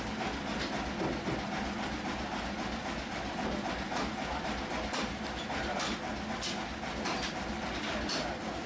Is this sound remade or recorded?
recorded